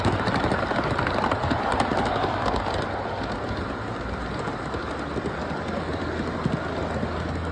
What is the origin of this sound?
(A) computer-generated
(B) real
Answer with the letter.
B